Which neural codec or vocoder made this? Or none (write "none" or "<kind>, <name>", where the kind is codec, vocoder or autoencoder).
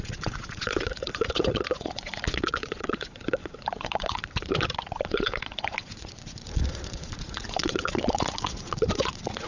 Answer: vocoder, Vocos